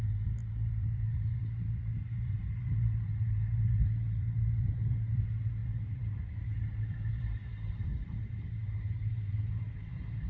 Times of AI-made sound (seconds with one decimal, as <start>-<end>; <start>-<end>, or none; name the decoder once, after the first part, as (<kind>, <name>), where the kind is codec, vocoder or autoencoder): 0.0-10.3 (vocoder, BigVGAN v2)